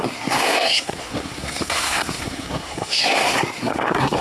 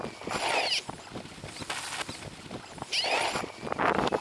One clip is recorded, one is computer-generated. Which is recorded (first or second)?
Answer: second